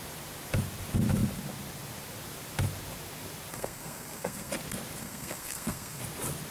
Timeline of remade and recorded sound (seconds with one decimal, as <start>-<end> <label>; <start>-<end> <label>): 0.0-3.5 recorded; 3.5-4.5 remade; 4.5-5.0 recorded; 5.0-6.0 remade; 6.0-6.5 recorded